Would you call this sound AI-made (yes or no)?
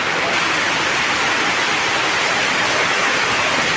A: no